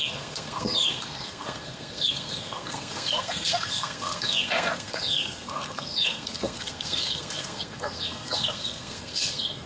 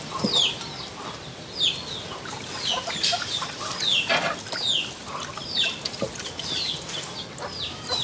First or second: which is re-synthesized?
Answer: first